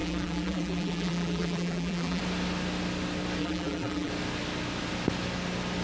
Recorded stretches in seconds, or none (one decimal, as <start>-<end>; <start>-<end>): 2.2-3.4; 4.1-5.8